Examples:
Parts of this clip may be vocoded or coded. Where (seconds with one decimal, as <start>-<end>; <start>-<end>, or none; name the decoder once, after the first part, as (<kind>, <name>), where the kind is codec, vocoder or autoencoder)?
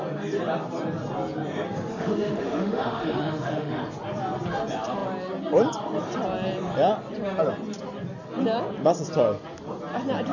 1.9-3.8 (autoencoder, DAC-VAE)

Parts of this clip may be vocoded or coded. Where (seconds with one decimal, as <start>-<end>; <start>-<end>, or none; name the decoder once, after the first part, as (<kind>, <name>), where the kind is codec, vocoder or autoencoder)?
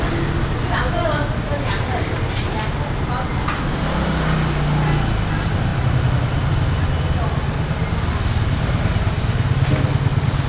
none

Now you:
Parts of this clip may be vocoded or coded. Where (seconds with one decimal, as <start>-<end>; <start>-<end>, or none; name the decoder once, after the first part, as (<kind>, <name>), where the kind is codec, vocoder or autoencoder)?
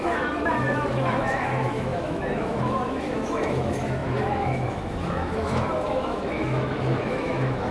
0.0-7.7 (autoencoder, DAC-VAE)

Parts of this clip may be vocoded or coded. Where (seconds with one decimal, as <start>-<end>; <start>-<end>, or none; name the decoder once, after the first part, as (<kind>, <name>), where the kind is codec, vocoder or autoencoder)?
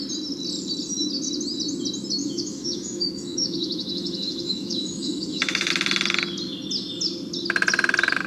2.2-5.7 (autoencoder, DAC-VAE)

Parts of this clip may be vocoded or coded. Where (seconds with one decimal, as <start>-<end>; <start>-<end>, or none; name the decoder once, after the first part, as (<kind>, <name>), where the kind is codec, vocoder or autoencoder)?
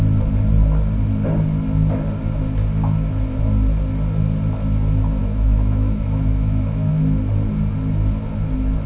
5.2-6.9 (autoencoder, DAC-VAE)